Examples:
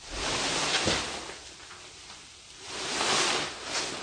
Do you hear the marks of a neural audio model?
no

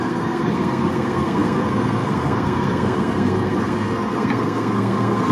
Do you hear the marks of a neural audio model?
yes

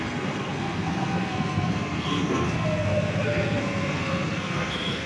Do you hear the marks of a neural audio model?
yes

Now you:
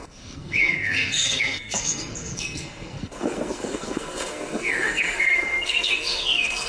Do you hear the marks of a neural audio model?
yes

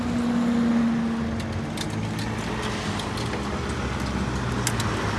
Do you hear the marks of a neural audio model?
no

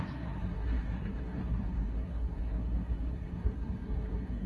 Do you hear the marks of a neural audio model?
yes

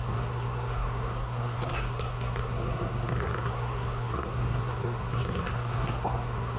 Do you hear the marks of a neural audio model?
yes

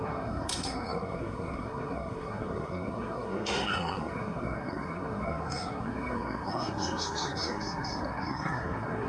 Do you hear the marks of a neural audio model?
yes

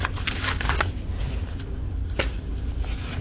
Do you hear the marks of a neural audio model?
no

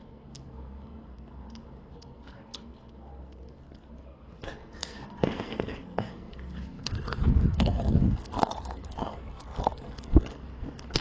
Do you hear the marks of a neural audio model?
yes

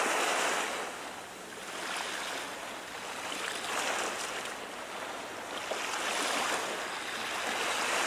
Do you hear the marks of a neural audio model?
no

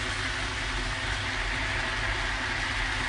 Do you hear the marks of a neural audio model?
no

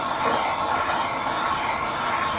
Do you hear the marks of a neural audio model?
no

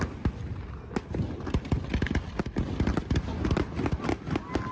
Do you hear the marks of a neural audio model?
no